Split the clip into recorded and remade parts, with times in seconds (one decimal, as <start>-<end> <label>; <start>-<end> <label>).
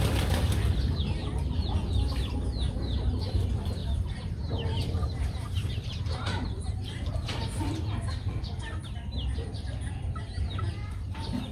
0.0-3.8 recorded; 3.8-7.1 remade; 7.1-11.5 recorded